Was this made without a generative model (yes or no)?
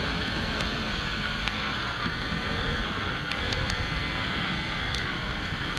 no